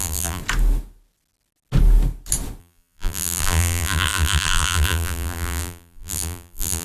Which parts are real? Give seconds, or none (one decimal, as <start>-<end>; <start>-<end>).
0.4-2.6